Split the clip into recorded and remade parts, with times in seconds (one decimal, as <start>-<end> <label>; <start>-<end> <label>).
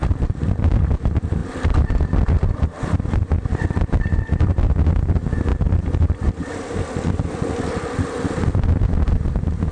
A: 0.0-9.7 recorded